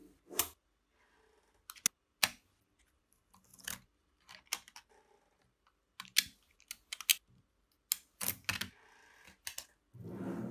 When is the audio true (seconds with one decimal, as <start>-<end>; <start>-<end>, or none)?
0.0-10.5